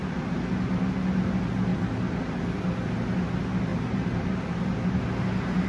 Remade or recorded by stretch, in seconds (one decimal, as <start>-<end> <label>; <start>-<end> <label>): 0.0-1.7 recorded; 1.7-2.4 remade; 2.4-3.7 recorded; 3.7-4.3 remade; 4.3-5.7 recorded